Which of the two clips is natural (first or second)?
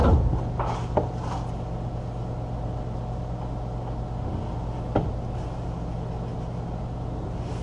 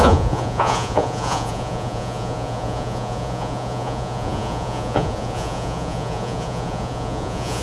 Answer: first